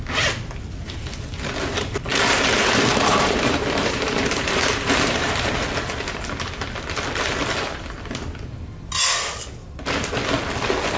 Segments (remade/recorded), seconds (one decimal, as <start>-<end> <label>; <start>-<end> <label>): 0.0-2.1 recorded; 2.1-5.5 remade; 5.5-11.0 recorded

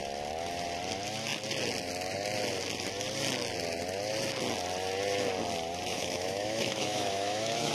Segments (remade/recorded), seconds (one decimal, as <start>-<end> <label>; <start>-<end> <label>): 0.0-5.9 recorded; 5.9-7.7 remade

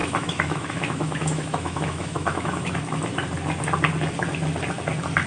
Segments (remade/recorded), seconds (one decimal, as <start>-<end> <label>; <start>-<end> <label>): 0.0-2.7 remade; 2.7-5.3 recorded